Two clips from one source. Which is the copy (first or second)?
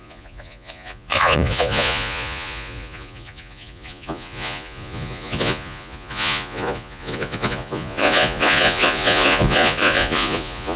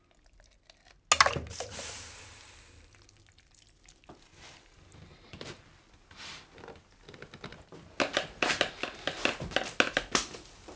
first